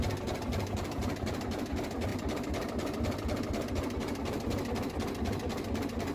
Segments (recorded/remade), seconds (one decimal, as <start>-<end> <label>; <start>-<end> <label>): 0.0-6.1 recorded